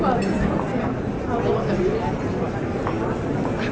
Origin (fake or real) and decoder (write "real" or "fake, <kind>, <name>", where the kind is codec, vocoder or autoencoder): real